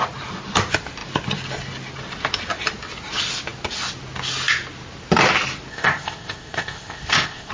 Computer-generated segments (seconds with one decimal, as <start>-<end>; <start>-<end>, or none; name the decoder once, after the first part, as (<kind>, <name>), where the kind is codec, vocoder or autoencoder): 5.7-7.5 (codec, ZipCodec)